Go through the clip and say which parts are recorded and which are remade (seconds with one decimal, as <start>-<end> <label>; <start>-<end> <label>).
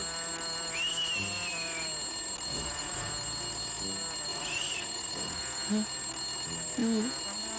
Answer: 0.0-2.5 recorded; 2.5-3.1 remade; 3.1-4.3 recorded; 4.3-5.4 remade; 5.4-7.6 recorded